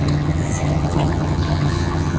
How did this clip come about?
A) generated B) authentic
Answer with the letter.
A